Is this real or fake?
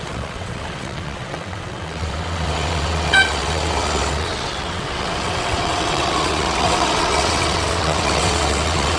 fake